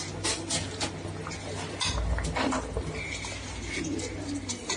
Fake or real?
real